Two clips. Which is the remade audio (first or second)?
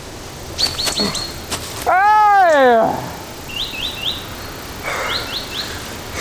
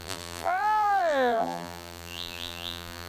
second